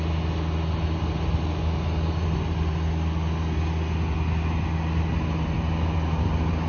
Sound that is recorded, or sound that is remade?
recorded